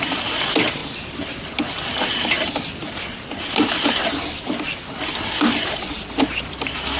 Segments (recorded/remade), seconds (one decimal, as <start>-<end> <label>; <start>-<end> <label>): 0.0-7.0 recorded